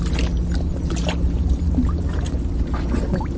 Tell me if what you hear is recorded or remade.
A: recorded